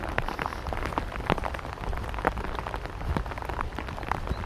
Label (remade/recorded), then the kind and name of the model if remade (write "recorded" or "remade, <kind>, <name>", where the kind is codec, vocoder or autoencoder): recorded